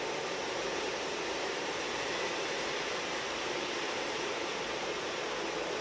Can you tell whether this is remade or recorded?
remade